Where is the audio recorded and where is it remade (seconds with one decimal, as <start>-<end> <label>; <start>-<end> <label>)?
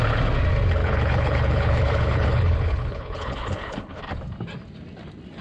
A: 0.0-0.8 recorded; 0.8-4.0 remade; 4.0-5.4 recorded